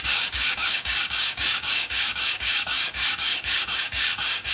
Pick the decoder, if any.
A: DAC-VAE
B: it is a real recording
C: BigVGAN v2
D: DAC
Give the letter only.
D